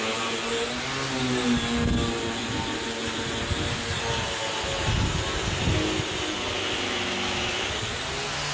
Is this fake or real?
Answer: real